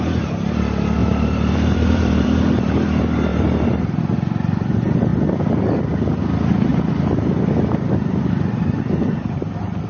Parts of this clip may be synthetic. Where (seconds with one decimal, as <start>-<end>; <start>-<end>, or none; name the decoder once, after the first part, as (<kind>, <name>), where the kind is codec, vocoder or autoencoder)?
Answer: 1.0-2.4 (vocoder, BigVGAN v2); 3.3-4.0; 6.7-8.7

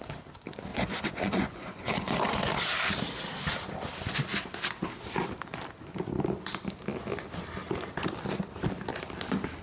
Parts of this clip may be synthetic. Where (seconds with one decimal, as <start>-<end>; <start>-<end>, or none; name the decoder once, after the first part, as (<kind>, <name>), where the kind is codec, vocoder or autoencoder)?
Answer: 0.7-2.2 (vocoder, Vocos)

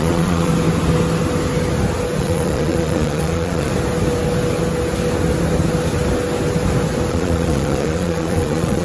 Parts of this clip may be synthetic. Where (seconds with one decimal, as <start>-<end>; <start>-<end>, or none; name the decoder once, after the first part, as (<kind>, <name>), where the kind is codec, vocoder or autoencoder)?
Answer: 0.0-0.5 (vocoder, Vocos); 2.2-3.7; 7.1-8.8

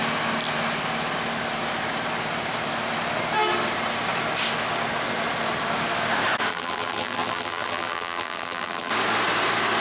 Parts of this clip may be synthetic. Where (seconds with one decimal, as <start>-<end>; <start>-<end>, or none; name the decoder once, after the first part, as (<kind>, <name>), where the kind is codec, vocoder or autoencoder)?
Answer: 6.5-8.9 (vocoder, BigVGAN v2)

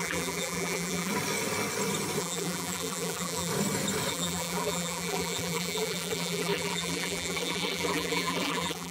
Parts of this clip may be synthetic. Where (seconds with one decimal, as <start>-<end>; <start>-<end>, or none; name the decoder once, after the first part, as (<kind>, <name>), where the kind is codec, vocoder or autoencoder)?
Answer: 0.0-1.1 (vocoder, BigVGAN v2); 2.2-3.5; 4.1-8.9

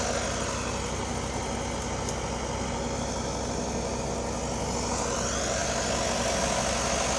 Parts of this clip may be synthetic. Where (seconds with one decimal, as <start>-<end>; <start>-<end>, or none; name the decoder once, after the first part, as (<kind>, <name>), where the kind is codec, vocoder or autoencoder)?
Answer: none

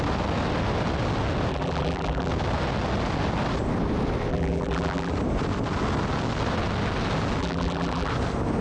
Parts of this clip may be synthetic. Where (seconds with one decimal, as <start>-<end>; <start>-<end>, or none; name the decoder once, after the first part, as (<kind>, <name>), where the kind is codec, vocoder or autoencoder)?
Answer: 1.5-2.3 (vocoder, BigVGAN v2); 4.3-5.1; 7.4-8.1